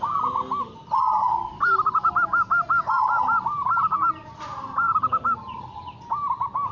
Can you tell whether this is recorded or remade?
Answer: recorded